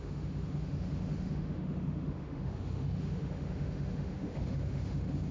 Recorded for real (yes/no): no